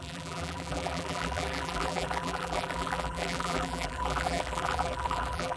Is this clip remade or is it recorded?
remade